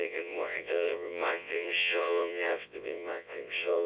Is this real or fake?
fake